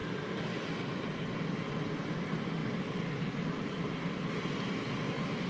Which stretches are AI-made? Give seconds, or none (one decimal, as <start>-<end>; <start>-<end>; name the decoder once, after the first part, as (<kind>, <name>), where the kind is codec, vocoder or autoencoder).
none